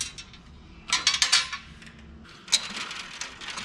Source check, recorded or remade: recorded